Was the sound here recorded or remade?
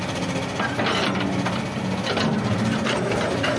recorded